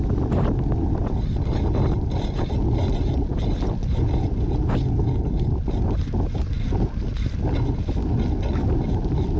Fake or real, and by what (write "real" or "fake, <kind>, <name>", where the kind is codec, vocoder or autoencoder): real